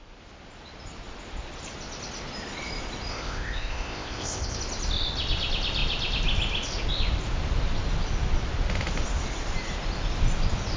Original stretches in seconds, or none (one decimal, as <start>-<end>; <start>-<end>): 0.0-3.1; 4.6-10.8